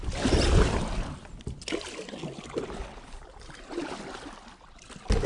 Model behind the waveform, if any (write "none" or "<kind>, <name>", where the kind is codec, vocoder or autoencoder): none